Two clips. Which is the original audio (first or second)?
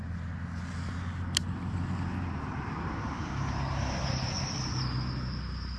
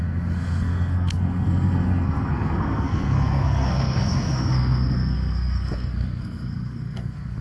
first